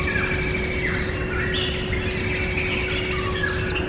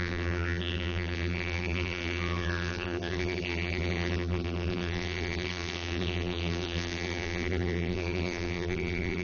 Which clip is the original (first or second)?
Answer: first